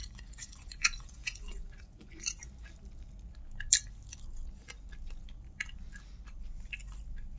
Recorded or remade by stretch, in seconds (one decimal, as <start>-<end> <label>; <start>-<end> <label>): 0.0-2.4 remade; 2.4-7.4 recorded